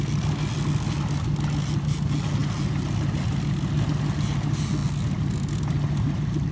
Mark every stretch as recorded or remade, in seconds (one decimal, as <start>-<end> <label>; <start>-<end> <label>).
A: 0.0-6.5 recorded